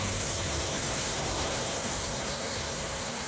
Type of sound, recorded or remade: remade